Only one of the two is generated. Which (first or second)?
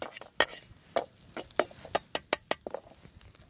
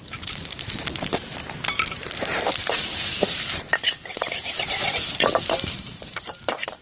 second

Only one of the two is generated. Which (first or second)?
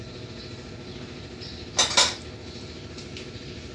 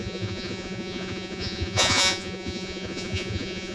second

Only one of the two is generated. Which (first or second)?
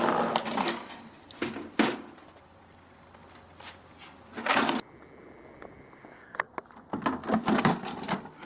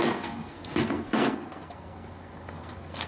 second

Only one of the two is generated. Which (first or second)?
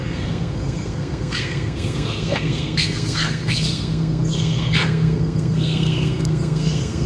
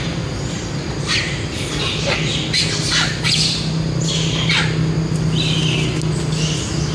first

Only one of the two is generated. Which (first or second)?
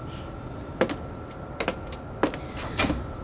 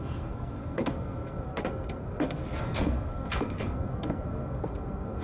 second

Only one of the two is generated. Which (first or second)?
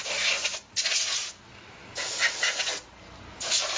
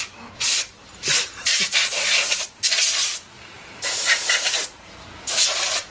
second